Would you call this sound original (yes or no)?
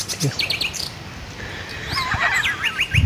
yes